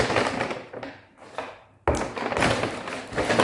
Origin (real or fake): real